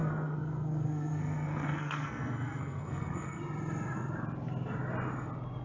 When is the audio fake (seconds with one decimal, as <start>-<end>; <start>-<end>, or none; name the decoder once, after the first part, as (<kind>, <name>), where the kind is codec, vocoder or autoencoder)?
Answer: 0.0-3.4 (codec, SNAC)